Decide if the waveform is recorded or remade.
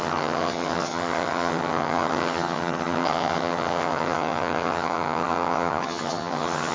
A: remade